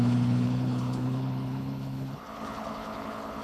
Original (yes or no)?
no